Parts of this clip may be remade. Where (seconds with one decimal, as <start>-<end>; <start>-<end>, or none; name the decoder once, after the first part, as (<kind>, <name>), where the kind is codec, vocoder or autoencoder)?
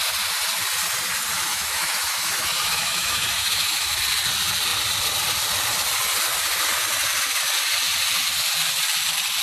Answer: 1.5-4.0 (autoencoder, DAC-VAE)